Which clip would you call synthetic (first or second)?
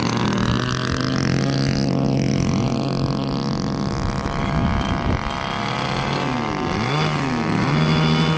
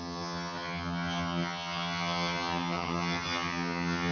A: second